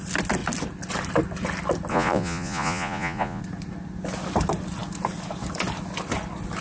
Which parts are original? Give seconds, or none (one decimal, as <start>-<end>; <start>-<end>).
0.0-1.9; 3.4-6.6